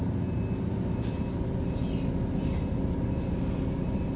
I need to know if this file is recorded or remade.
recorded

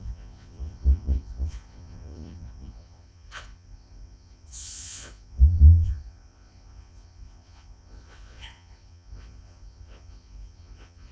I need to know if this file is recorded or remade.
remade